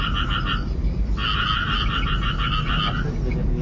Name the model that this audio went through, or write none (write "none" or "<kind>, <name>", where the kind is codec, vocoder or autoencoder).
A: none